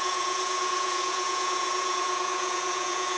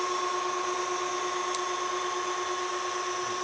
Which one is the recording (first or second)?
second